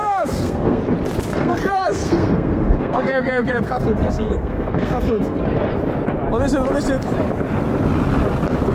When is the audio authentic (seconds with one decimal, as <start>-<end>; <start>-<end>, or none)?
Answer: 0.8-1.3; 5.4-8.7